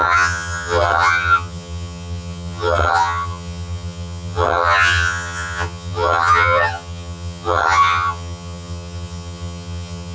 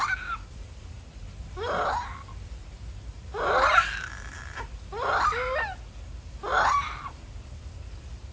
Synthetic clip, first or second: first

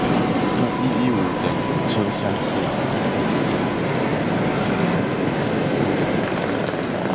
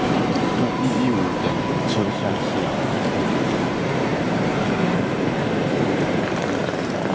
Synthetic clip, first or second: second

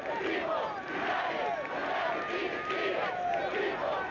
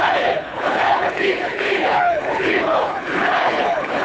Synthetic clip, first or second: second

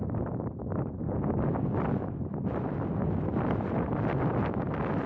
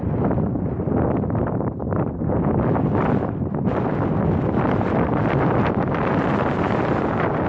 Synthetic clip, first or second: second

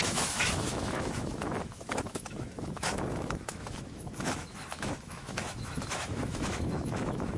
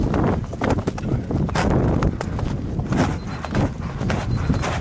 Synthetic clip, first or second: first